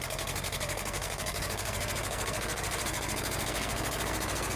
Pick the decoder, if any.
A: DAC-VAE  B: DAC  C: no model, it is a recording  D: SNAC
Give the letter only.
D